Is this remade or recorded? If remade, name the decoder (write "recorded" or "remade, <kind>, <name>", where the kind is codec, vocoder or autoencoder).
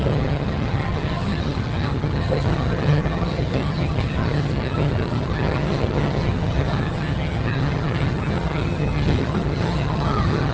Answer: remade, vocoder, HiFi-GAN